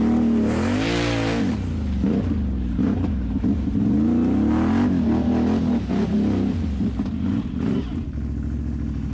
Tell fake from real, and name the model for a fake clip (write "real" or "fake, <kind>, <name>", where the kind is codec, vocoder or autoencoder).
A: real